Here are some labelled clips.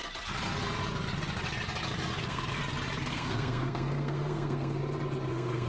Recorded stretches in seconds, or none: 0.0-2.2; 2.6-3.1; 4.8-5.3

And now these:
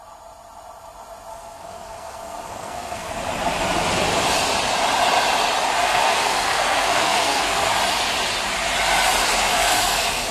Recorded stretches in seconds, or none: 0.0-1.3; 3.1-5.8; 7.7-9.5

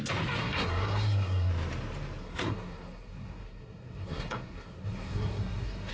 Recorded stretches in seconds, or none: 0.0-0.4; 1.5-2.2

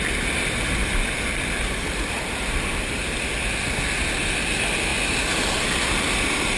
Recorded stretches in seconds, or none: 0.0-6.6

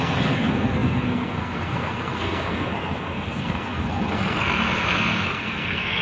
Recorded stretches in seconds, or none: none